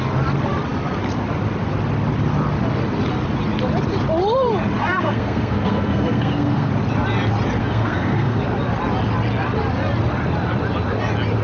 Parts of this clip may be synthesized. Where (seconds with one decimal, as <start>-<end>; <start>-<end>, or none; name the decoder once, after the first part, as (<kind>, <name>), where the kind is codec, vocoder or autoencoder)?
4.8-6.7 (codec, SNAC); 7.6-8.4